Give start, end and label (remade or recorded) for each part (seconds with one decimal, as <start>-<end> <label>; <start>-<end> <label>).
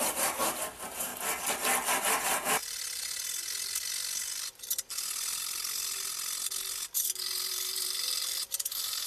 0.0-1.1 remade; 1.1-2.0 recorded; 2.0-2.6 remade; 2.6-7.5 recorded; 7.5-9.1 remade